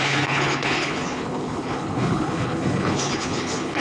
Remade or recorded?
remade